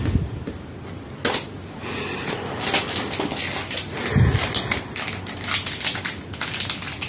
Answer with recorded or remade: recorded